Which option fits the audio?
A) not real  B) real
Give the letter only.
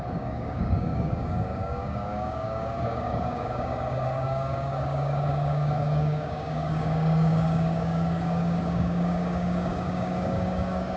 A